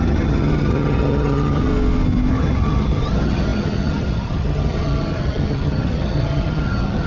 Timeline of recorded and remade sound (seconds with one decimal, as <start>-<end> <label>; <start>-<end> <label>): 0.0-1.7 remade; 1.7-2.3 recorded; 2.3-7.1 remade

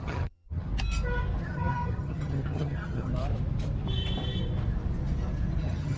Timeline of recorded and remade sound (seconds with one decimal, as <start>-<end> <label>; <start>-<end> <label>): 0.0-0.7 remade; 0.7-1.4 recorded; 1.4-3.1 remade; 3.1-5.6 recorded; 5.6-6.0 remade

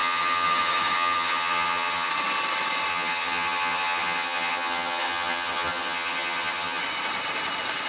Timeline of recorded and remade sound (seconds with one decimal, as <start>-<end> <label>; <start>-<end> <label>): 0.0-2.1 remade; 2.1-2.9 recorded; 2.9-6.8 remade; 6.8-7.9 recorded

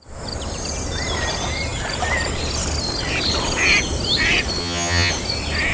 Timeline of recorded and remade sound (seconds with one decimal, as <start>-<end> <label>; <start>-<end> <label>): 0.0-4.6 recorded; 4.6-5.1 remade; 5.1-5.7 recorded

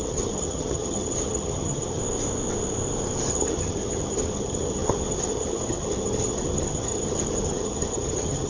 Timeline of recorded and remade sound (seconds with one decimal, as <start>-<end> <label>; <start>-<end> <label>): 0.0-2.0 remade; 2.0-3.3 recorded; 3.3-8.5 remade

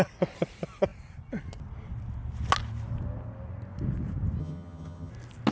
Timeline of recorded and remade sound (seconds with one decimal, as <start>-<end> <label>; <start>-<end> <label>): 0.0-4.4 recorded; 4.4-5.1 remade; 5.1-5.5 recorded

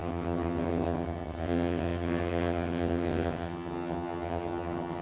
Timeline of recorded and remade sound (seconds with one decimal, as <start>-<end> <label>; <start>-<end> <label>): 0.0-5.0 remade

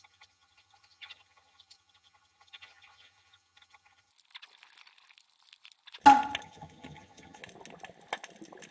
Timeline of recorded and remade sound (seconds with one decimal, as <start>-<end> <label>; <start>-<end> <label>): 0.0-4.1 remade; 4.1-6.4 recorded; 6.4-7.4 remade; 7.4-8.7 recorded